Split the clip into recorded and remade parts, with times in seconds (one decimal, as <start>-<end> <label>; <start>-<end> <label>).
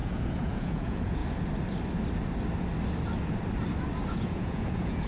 0.0-1.2 remade; 1.2-4.1 recorded; 4.1-5.1 remade